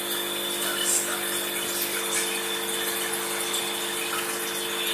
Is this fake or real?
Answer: real